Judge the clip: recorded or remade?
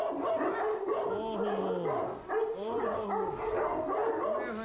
recorded